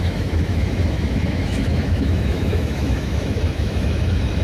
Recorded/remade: remade